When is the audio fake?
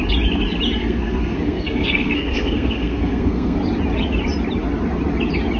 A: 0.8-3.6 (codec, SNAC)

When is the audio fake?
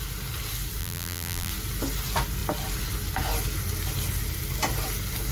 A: 0.8-1.5 (vocoder, BigVGAN v2)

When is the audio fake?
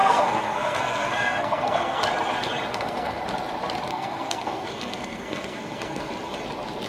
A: 0.0-2.0 (codec, SNAC); 2.7-3.2; 3.9-6.1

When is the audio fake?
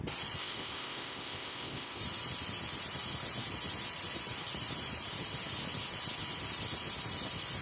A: 0.4-2.0 (codec, ZipCodec)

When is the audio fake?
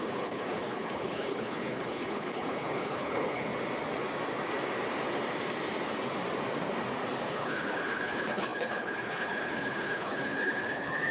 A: 0.0-3.5 (codec, HILCodec); 7.3-11.1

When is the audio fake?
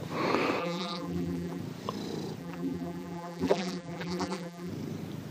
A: 0.6-1.6 (vocoder, BigVGAN v2); 2.4-4.7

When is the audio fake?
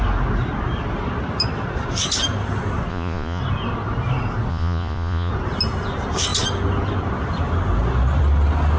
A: 2.9-3.4 (vocoder, Vocos); 4.5-5.3